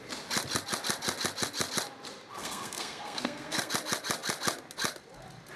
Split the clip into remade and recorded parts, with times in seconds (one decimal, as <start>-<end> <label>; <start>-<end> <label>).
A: 0.0-2.4 recorded; 2.4-3.7 remade; 3.7-5.6 recorded